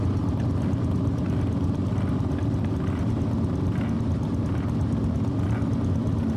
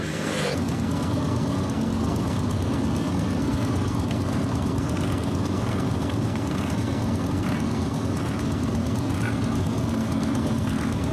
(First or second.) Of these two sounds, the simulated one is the second